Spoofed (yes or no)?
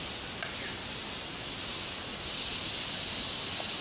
no